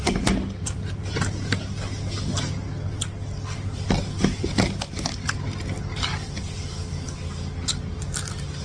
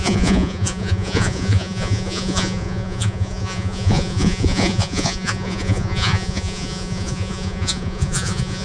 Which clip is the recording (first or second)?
first